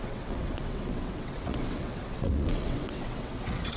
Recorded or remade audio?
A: remade